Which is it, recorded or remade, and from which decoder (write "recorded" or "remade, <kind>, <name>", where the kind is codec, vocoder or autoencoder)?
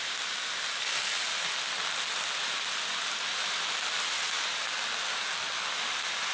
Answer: recorded